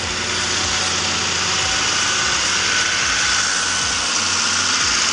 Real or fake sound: real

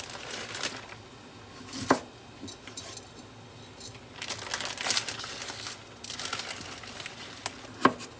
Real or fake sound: real